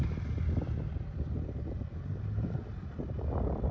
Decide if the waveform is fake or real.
real